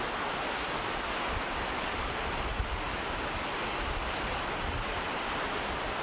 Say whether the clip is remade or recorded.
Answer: recorded